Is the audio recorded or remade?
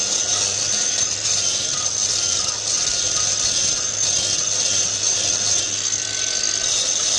recorded